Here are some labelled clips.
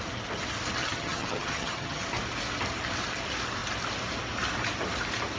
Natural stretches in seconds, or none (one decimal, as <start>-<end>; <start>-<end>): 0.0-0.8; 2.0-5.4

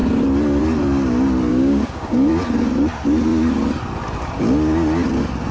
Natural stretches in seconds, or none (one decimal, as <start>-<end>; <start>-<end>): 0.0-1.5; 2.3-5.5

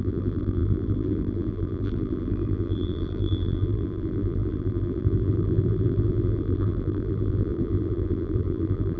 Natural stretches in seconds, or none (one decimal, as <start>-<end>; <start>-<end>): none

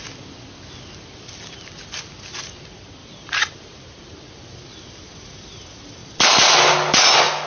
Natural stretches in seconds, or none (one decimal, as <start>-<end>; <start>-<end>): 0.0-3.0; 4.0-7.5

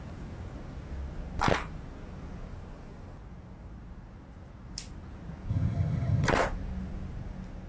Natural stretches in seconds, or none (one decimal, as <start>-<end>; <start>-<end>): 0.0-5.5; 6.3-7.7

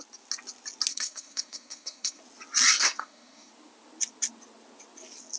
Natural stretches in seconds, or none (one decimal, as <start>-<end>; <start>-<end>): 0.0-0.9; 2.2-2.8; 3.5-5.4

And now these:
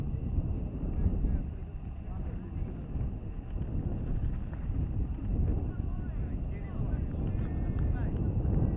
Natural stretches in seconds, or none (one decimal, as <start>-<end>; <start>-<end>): 1.1-4.1; 5.5-8.8

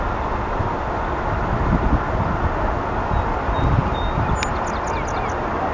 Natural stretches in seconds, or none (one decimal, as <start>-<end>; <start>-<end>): 0.0-5.7